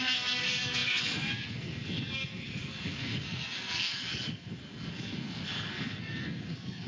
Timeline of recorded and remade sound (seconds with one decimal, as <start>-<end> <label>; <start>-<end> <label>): 0.0-6.9 remade

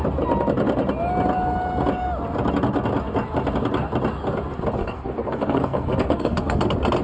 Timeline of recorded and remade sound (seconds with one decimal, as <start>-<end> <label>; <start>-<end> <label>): 0.0-4.8 recorded; 4.8-6.6 remade; 6.6-7.0 recorded

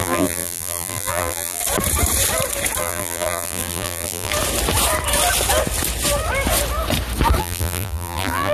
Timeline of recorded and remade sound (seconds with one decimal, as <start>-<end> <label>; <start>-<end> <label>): 0.0-1.6 remade; 1.6-2.8 recorded; 2.8-4.3 remade; 4.3-7.4 recorded; 7.4-8.5 remade